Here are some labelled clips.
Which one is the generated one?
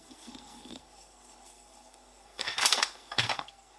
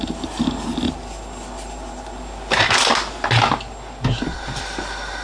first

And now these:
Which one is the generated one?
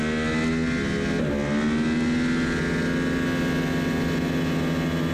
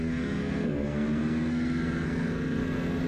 second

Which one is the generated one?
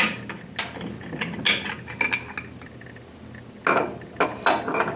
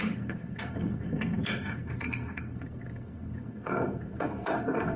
second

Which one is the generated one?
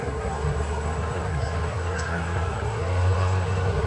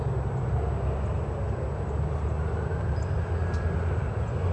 first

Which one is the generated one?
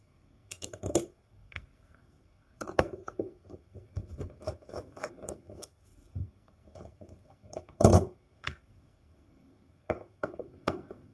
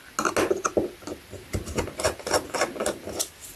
first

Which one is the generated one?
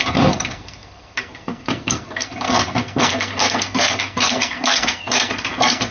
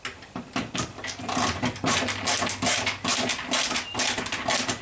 first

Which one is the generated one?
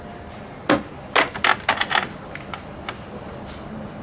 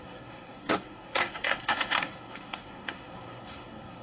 second